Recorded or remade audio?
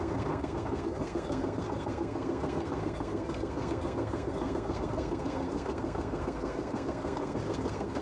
remade